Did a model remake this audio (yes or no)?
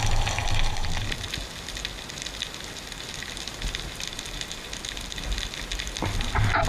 no